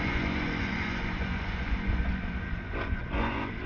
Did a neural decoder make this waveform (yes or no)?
yes